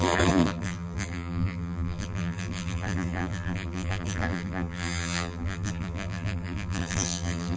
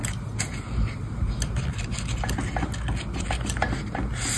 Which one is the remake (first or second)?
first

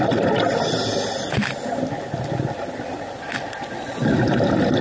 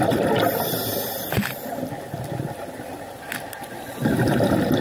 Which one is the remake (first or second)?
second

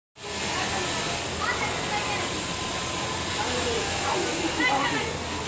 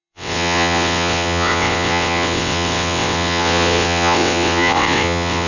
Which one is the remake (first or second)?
second